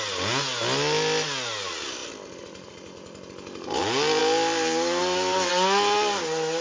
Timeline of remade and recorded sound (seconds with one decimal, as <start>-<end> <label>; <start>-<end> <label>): 0.0-2.0 recorded; 2.0-3.8 remade; 3.8-4.2 recorded; 4.2-5.5 remade; 5.5-6.6 recorded

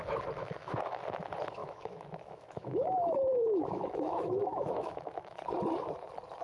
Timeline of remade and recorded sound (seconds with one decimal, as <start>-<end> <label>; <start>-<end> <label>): 0.0-0.4 recorded; 0.4-1.0 remade; 1.0-1.6 recorded; 1.6-5.4 remade; 5.4-6.4 recorded

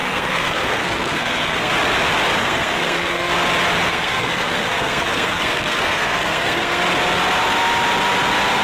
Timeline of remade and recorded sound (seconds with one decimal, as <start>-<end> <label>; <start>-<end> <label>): 0.0-1.7 remade; 1.7-2.4 recorded; 2.4-3.3 remade; 3.3-3.9 recorded; 3.9-6.8 remade; 6.8-8.6 recorded

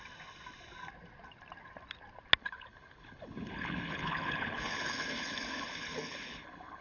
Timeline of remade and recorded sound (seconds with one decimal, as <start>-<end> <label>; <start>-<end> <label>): 0.0-2.4 recorded; 2.4-6.8 remade

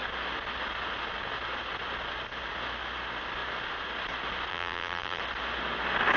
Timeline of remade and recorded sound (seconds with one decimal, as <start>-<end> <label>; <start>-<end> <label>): 0.0-4.5 recorded; 4.5-5.2 remade; 5.2-6.2 recorded

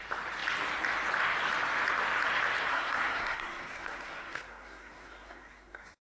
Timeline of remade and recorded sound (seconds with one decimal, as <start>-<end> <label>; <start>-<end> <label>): 0.0-2.7 recorded; 2.7-6.1 remade

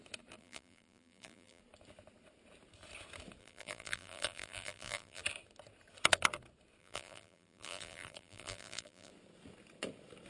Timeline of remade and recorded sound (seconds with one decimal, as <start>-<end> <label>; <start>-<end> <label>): 0.0-0.4 recorded; 0.4-1.6 remade; 1.6-3.4 recorded; 3.4-5.2 remade; 5.2-6.8 recorded; 6.8-9.1 remade; 9.1-10.3 recorded

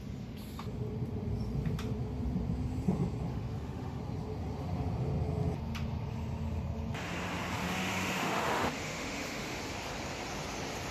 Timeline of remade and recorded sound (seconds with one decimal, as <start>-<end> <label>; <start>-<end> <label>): 0.0-3.3 recorded; 3.3-4.0 remade; 4.0-7.6 recorded; 7.6-9.6 remade; 9.6-10.9 recorded